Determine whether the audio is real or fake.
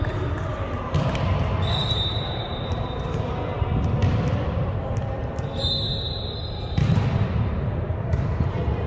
real